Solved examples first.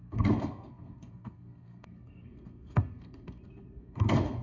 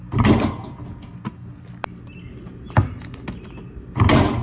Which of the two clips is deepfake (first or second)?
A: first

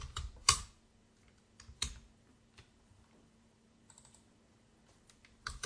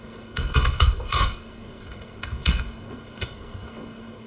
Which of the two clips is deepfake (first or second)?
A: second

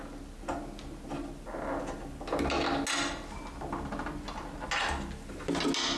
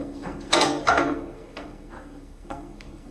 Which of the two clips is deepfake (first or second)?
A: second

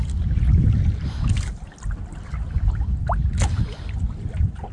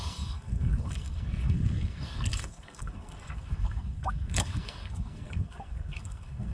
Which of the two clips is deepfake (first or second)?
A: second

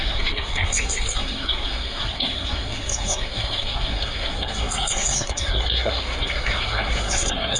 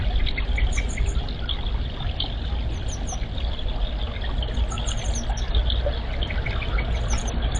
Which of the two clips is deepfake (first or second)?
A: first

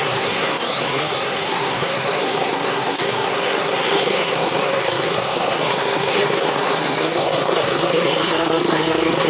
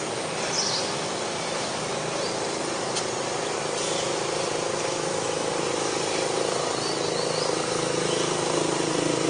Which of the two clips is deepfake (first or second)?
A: first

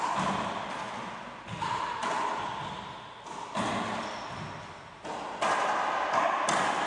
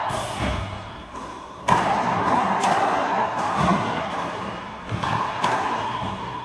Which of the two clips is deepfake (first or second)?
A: second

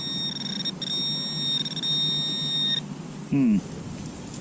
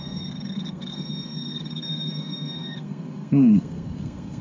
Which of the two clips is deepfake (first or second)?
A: second